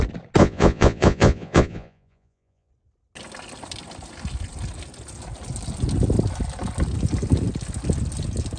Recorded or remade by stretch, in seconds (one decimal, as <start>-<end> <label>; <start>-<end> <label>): 0.0-0.4 recorded; 0.4-2.7 remade; 2.7-8.6 recorded